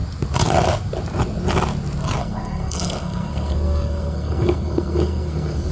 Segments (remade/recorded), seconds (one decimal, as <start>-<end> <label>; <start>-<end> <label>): 0.0-2.2 recorded; 2.2-5.7 remade